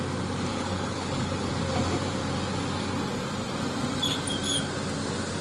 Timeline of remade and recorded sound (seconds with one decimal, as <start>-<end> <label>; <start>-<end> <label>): 0.0-0.5 recorded; 0.5-1.5 remade; 1.5-5.4 recorded